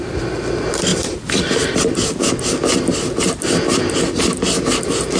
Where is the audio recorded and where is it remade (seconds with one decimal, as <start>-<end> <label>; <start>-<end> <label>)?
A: 0.0-5.2 recorded